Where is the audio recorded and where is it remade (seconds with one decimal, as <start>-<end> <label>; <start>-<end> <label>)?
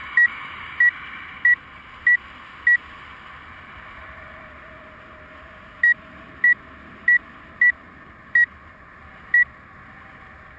0.0-0.8 remade; 0.8-10.6 recorded